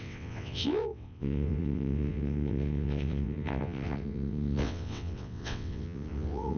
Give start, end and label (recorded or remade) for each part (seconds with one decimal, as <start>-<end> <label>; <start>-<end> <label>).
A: 0.0-6.6 remade